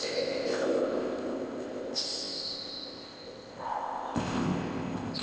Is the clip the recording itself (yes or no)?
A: no